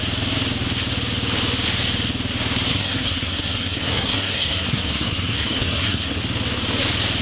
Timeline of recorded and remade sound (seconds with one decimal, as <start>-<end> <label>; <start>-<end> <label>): 0.0-2.7 recorded; 2.7-6.2 remade; 6.2-7.2 recorded